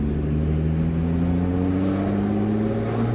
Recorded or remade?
recorded